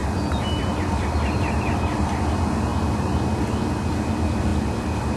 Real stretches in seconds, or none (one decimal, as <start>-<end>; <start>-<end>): 0.0-5.2

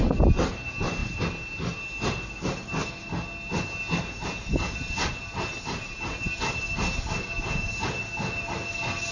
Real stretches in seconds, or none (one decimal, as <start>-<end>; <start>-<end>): 0.0-9.1

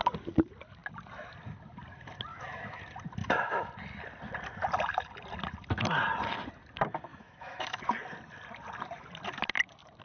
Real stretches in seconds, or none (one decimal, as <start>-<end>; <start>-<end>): 0.0-2.3; 2.8-3.2; 3.7-7.1; 7.8-10.0

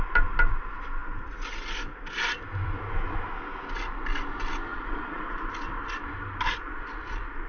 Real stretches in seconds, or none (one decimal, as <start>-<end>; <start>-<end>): 0.0-4.7; 5.2-7.5

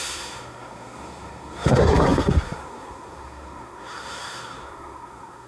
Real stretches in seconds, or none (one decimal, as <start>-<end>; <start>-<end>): none

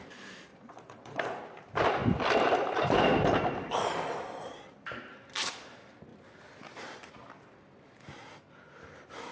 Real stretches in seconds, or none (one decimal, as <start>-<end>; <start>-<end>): 0.0-0.5; 1.2-9.3